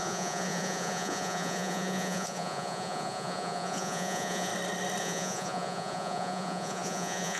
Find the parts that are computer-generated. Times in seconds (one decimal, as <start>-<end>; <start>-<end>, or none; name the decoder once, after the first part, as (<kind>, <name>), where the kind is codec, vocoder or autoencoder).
0.0-4.5 (vocoder, Vocos); 5.0-7.4